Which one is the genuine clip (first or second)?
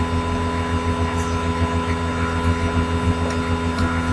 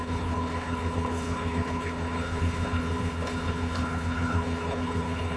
first